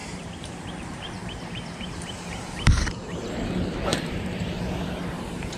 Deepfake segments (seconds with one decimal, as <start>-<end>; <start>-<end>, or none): 0.0-3.3; 3.9-4.6